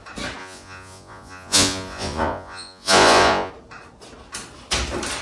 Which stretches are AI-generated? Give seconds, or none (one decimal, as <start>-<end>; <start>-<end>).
0.4-3.5